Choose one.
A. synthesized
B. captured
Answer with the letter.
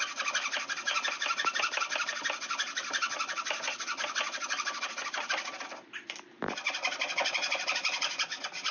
B